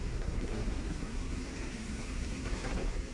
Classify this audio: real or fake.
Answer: fake